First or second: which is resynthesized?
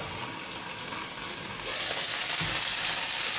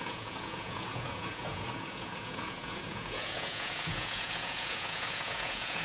second